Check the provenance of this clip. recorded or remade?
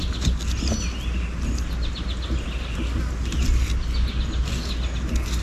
recorded